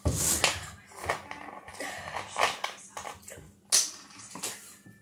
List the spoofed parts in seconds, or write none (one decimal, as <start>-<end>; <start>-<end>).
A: none